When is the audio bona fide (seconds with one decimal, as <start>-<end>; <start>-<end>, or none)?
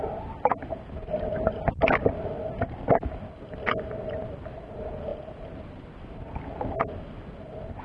0.0-7.8